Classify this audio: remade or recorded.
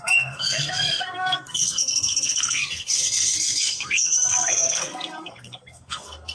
remade